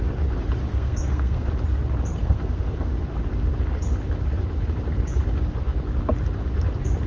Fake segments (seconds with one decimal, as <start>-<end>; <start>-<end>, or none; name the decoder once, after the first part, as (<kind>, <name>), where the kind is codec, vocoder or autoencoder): 0.7-1.5 (codec, SNAC); 2.2-2.9